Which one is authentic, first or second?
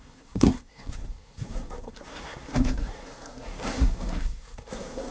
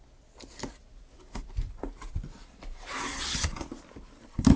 second